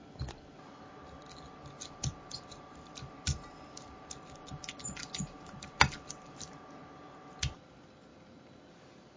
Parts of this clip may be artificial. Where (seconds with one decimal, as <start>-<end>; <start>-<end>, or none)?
1.6-6.4; 8.1-8.6

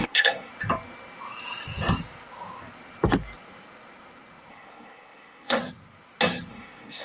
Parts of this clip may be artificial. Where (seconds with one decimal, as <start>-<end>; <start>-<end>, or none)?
0.0-0.5; 4.5-5.6; 6.5-7.0

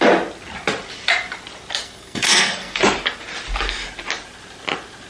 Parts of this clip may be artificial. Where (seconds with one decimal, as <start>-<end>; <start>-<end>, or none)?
1.8-2.8